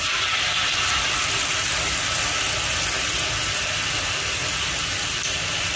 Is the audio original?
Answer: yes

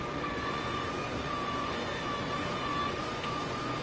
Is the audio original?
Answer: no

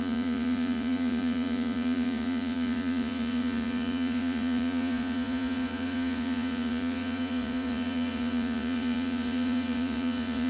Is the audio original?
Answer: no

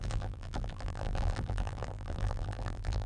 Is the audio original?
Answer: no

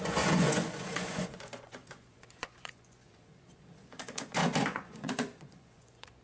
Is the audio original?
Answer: no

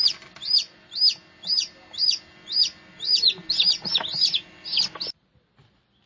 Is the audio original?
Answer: yes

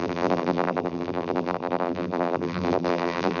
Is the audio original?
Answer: no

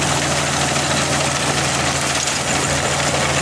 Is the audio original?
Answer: yes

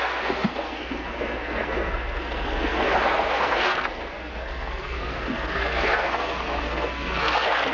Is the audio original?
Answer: no